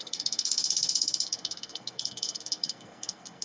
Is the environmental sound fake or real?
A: fake